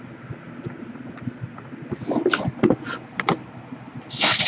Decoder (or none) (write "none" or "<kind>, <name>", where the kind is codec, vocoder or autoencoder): none